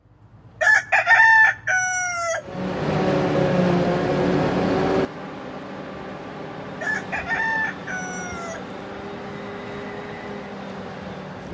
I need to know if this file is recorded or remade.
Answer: recorded